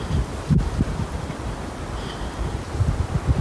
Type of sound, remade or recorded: recorded